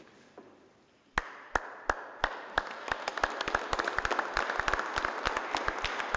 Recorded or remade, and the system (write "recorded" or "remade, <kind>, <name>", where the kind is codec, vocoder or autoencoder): recorded